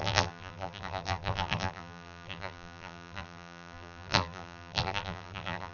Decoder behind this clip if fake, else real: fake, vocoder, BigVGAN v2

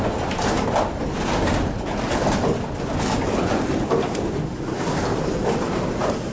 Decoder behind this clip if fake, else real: real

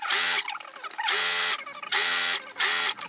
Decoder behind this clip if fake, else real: real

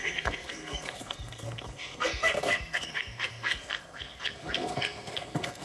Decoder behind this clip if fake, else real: fake, codec, SNAC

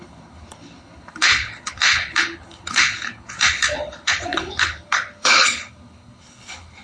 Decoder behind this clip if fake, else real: fake, codec, HILCodec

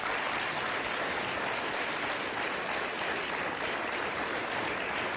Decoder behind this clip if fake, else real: real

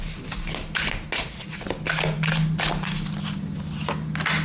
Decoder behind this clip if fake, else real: real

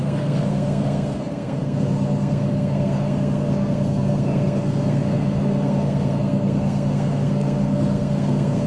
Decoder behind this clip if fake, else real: fake, codec, SNAC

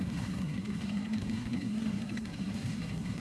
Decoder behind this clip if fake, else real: fake, codec, SNAC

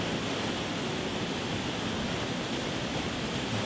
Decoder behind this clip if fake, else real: real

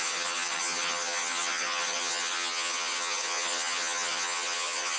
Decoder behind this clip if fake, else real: fake, vocoder, HiFi-GAN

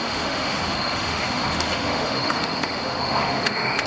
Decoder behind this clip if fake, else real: fake, autoencoder, DAC-VAE